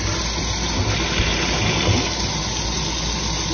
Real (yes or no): yes